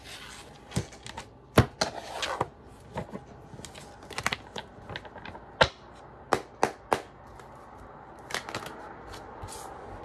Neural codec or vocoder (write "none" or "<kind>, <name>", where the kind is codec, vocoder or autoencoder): none